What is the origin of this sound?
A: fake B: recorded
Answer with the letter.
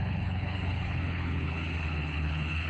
A